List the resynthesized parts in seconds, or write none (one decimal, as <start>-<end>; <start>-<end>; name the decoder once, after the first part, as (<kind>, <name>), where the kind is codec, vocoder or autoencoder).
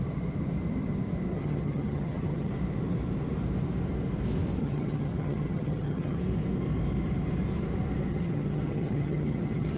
1.3-2.5 (vocoder, HiFi-GAN); 4.6-6.2; 8.1-9.8